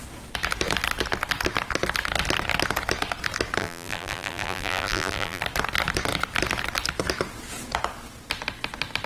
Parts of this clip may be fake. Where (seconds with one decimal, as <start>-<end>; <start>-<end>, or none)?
3.6-5.4